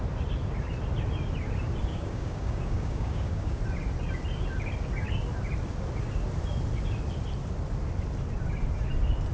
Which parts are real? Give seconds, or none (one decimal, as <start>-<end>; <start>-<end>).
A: 0.0-1.9; 3.6-9.3

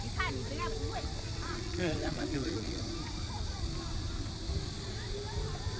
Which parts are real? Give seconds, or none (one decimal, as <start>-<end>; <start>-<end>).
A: 0.0-1.4; 2.8-5.8

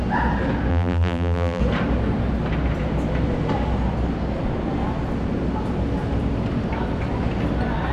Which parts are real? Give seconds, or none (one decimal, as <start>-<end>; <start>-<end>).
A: 0.0-0.7; 1.6-7.9

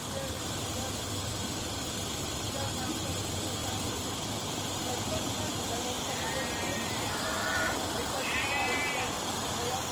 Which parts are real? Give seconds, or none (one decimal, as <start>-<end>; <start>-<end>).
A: 0.0-3.6; 6.2-6.7; 8.9-9.9